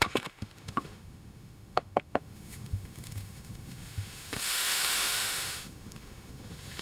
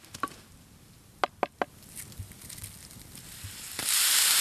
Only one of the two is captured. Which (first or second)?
second